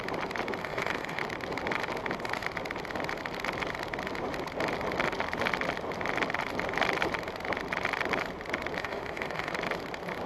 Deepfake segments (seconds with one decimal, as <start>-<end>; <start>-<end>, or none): 0.6-1.2; 8.8-9.5